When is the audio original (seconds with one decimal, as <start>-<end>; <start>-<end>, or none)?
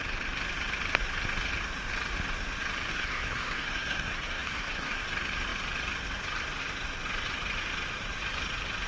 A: 0.0-2.9; 5.0-8.9